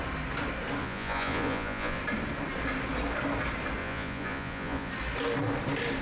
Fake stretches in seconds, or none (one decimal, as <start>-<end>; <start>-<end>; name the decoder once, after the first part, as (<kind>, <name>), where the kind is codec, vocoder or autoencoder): 0.8-2.0 (vocoder, Vocos); 3.8-4.9